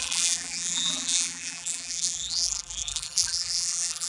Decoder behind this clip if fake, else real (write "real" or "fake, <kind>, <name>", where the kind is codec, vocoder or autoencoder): fake, vocoder, BigVGAN v2